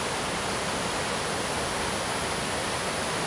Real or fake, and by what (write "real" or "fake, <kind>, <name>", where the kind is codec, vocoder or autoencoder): real